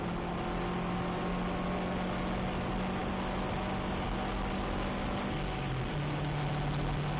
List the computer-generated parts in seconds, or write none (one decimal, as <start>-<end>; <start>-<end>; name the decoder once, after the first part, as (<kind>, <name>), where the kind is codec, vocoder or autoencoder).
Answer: none